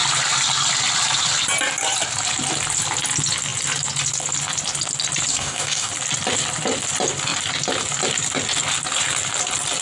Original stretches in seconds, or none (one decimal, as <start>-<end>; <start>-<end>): 0.0-5.3; 5.9-9.8

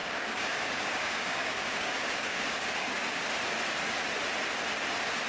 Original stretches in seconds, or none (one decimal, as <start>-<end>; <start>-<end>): 3.2-5.3

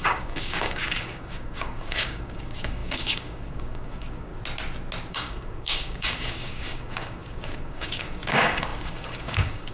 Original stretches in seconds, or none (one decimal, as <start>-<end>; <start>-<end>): 4.3-5.1

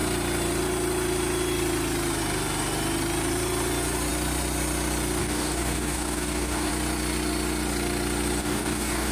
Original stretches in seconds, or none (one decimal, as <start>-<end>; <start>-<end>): 0.0-5.2; 6.7-8.4

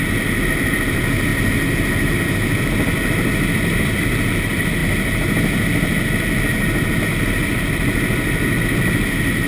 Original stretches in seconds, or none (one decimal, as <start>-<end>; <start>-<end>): 0.0-9.5

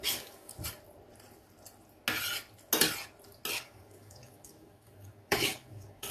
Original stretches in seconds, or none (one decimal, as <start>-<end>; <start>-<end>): 0.5-3.5

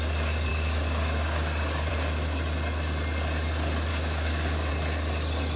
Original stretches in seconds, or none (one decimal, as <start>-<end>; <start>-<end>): 0.0-0.5; 1.9-3.9; 4.7-5.6

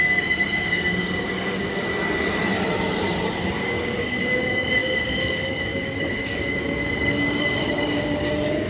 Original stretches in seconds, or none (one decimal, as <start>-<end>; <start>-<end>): 1.9-3.5